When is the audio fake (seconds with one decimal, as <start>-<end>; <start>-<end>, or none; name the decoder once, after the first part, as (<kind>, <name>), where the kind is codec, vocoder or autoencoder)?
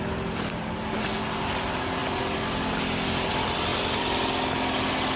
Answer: none